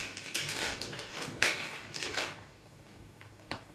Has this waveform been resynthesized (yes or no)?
yes